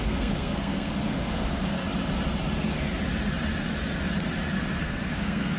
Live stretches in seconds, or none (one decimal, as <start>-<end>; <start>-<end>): 1.8-4.8